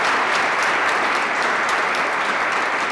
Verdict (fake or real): real